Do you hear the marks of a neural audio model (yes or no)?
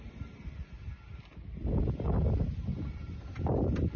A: no